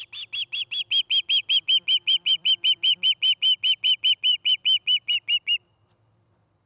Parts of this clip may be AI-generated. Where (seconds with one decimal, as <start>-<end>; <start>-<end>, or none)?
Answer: 1.4-5.4